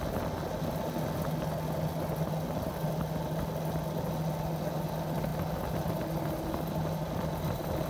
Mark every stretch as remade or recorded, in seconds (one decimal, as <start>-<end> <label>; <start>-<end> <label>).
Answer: 0.0-7.9 recorded